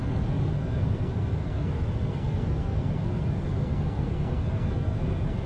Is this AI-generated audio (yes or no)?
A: yes